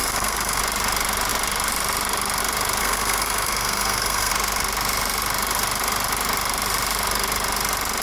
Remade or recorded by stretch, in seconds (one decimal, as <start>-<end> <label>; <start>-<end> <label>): 0.0-0.6 remade; 0.6-2.8 recorded; 2.8-4.3 remade; 4.3-8.0 recorded